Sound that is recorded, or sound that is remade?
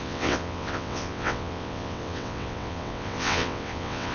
remade